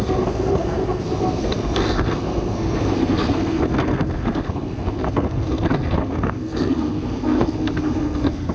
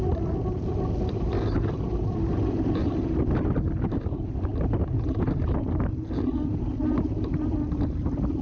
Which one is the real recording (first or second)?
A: second